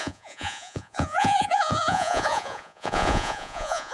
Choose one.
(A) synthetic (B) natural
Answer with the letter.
A